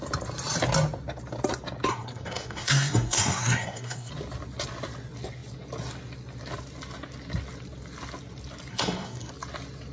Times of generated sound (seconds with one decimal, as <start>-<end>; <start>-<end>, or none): 1.9-4.1; 8.7-9.3